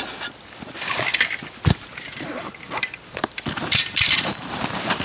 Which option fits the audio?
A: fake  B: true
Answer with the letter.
A